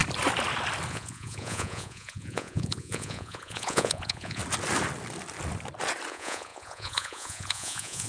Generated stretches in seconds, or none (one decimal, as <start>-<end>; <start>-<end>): 0.9-4.4; 6.1-8.1